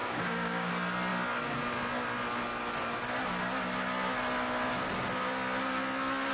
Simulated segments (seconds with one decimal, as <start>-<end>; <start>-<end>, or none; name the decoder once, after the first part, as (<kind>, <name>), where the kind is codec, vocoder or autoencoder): 0.0-0.7 (codec, DAC)